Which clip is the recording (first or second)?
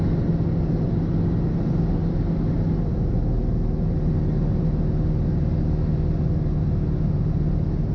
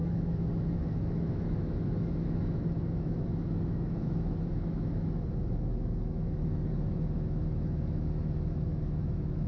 first